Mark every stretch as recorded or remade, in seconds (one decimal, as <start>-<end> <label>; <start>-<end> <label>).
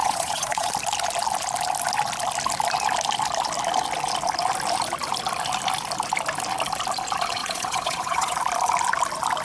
0.0-0.7 remade; 0.7-7.4 recorded; 7.4-8.4 remade; 8.4-9.4 recorded